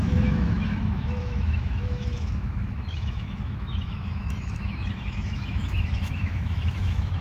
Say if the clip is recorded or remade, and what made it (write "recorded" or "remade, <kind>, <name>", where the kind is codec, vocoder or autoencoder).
remade, autoencoder, DAC-VAE